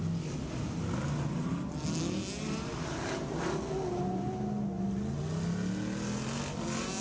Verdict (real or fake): real